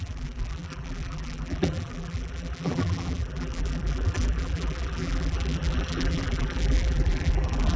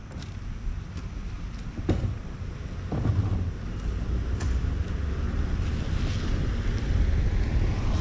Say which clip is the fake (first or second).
first